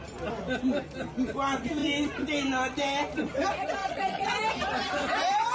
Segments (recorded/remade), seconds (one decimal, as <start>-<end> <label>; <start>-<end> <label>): 0.0-3.8 recorded; 3.8-4.4 remade; 4.4-5.5 recorded